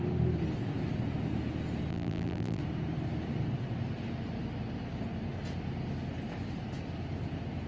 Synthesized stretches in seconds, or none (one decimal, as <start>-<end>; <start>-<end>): 1.9-2.6